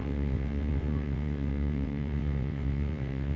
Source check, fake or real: fake